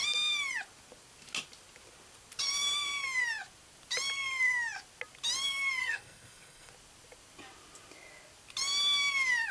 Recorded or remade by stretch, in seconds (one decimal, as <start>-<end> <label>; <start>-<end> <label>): 0.0-5.8 recorded; 5.8-6.7 remade; 6.7-9.5 recorded